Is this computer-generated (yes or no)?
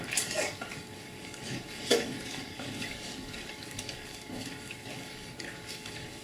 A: yes